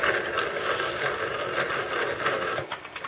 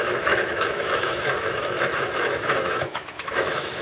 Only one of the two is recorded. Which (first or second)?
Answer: first